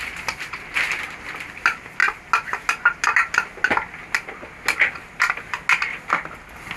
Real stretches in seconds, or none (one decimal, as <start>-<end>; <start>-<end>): 0.0-6.8